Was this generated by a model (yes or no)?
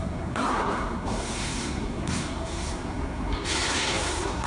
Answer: yes